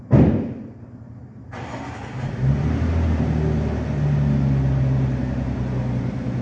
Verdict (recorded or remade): recorded